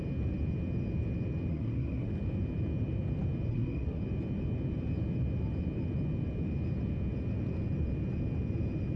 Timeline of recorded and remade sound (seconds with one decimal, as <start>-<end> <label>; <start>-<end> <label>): 0.0-1.5 recorded; 1.5-2.1 remade; 2.1-3.5 recorded; 3.5-4.0 remade; 4.0-9.0 recorded